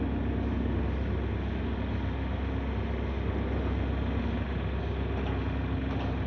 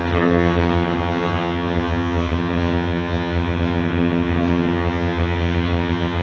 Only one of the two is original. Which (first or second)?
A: first